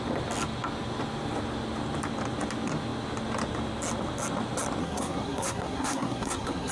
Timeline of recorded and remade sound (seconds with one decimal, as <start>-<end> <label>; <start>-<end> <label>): 0.0-4.8 recorded; 4.8-6.7 remade